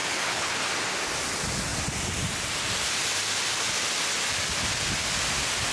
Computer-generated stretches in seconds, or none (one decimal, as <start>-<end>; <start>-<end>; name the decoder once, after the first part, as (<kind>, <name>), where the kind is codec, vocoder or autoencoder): 0.0-0.5 (codec, HILCodec)

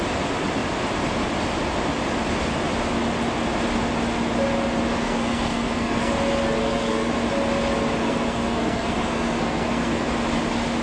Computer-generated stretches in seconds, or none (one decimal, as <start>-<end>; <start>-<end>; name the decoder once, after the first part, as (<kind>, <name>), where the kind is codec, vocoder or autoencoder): 4.9-6.1 (codec, SNAC); 6.6-7.1; 8.0-10.1